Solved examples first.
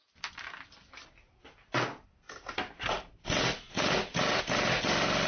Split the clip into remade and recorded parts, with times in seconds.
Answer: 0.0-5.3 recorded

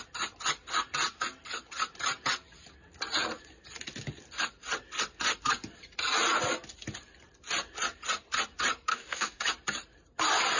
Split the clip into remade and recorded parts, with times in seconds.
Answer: 0.0-8.9 recorded; 8.9-9.4 remade; 9.4-10.6 recorded